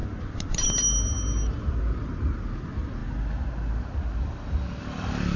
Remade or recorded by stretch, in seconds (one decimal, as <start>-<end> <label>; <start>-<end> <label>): 0.0-5.4 recorded